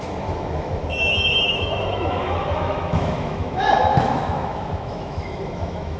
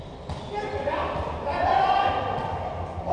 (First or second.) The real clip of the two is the second